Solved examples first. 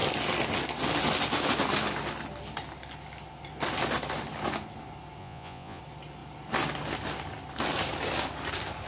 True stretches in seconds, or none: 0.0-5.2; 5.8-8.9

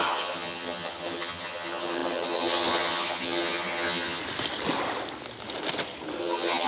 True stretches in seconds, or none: 4.2-6.2

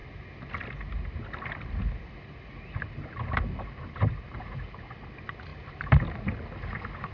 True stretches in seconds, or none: 0.0-4.3; 5.0-5.5; 6.0-7.1

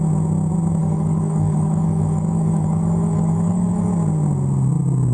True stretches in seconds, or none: 0.0-0.8; 3.9-5.1

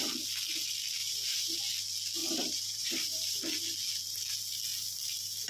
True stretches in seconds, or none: 0.0-1.0; 1.6-2.2; 3.4-5.5